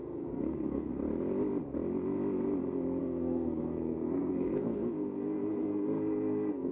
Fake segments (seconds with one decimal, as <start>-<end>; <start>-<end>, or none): 0.0-0.9; 3.0-6.7